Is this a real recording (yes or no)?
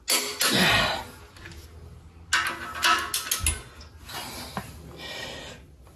yes